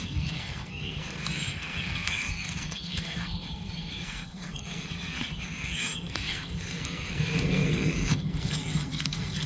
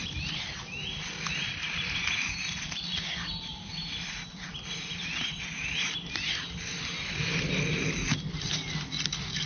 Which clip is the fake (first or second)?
first